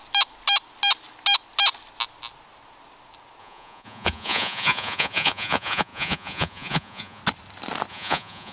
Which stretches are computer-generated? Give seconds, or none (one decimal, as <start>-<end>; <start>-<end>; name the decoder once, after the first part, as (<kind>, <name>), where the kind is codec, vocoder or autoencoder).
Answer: 3.4-7.2 (vocoder, Vocos); 7.9-8.5